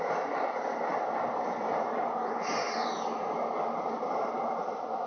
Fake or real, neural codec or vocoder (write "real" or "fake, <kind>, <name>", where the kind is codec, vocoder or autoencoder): fake, vocoder, BigVGAN v2